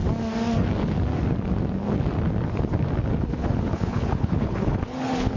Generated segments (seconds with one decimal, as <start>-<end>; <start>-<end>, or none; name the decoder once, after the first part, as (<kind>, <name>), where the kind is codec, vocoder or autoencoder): 3.2-5.4 (codec, HILCodec)